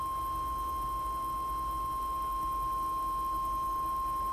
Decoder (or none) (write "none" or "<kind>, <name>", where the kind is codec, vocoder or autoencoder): none